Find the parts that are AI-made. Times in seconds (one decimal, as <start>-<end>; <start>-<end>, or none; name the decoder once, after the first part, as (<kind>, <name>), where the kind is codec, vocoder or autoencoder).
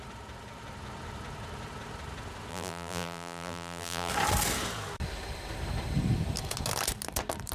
2.5-4.1 (vocoder, BigVGAN v2)